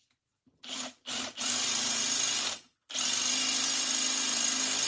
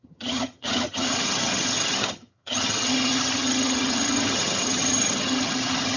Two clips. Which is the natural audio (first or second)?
first